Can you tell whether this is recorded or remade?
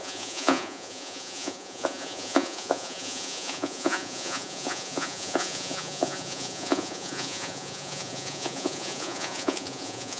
remade